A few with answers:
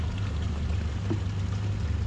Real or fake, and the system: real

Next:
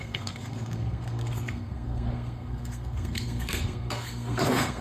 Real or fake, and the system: fake, codec, SNAC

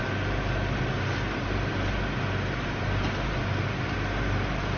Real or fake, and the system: real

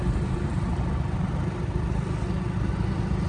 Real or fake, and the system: real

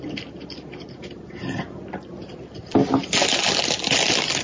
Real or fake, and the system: real